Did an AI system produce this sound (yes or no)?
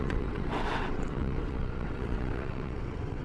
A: yes